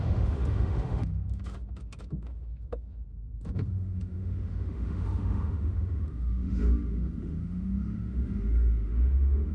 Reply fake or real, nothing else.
fake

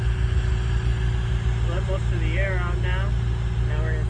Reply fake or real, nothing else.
real